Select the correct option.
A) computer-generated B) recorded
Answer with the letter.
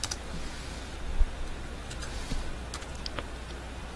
B